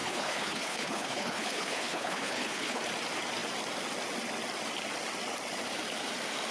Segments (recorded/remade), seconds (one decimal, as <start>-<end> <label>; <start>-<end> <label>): 0.0-2.8 remade; 2.8-6.5 recorded